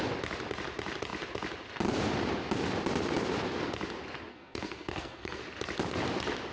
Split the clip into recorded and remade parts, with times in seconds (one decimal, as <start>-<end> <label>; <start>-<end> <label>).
0.0-4.3 recorded; 4.3-5.4 remade; 5.4-6.5 recorded